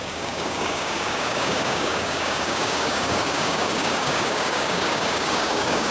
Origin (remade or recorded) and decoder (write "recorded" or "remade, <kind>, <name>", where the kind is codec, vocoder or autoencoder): remade, codec, DAC